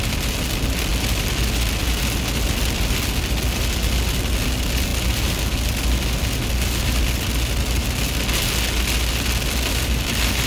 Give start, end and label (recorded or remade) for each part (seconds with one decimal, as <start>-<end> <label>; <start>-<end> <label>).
0.0-10.5 recorded